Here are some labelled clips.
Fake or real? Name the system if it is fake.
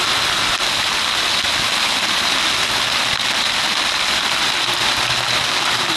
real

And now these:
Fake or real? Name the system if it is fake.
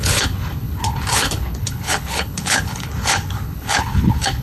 fake, codec, HILCodec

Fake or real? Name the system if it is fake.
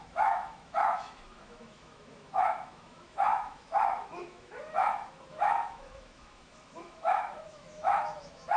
fake, autoencoder, DAC-VAE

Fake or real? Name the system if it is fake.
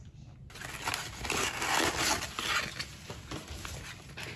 real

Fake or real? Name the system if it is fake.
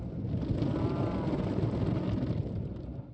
real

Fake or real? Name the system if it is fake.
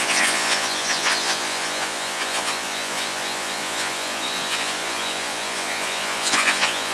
fake, vocoder, Vocos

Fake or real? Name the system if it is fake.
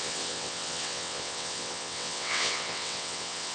fake, vocoder, WaveNeXt